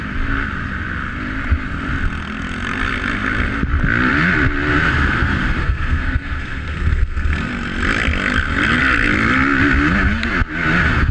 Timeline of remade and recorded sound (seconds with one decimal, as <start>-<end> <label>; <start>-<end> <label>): 0.0-5.6 recorded; 5.6-7.5 remade; 7.5-11.1 recorded